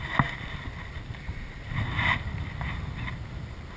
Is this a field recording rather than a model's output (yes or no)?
yes